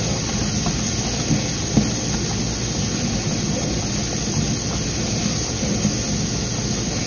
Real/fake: real